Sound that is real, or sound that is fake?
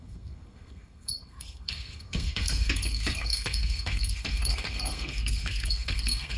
fake